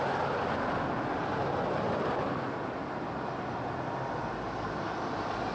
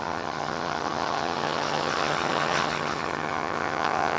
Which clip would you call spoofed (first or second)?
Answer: second